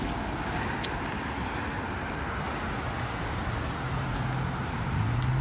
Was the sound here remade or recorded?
recorded